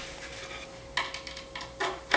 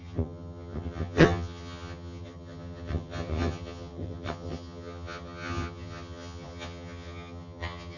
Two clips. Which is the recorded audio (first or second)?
first